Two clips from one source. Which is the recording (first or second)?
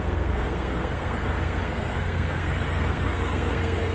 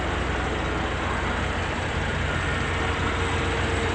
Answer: second